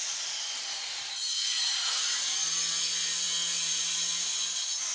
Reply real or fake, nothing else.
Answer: real